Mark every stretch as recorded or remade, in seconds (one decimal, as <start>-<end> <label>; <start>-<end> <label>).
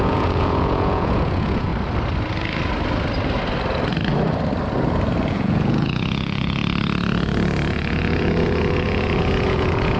0.0-1.7 remade; 1.7-5.3 recorded; 5.3-6.6 remade; 6.6-7.7 recorded; 7.7-10.0 remade